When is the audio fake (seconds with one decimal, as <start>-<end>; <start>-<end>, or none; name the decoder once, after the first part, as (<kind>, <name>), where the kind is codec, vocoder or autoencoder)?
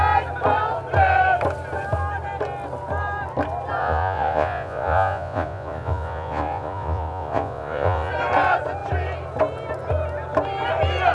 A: 3.8-8.1 (vocoder, Vocos)